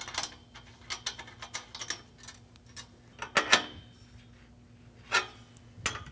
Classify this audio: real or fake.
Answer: real